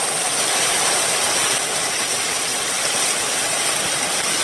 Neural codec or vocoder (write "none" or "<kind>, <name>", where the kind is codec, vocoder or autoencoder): none